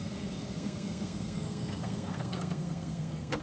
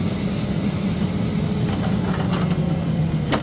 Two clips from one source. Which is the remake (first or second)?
first